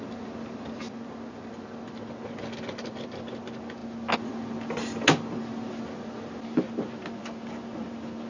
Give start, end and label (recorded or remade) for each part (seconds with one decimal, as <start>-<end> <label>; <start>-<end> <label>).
0.0-8.3 recorded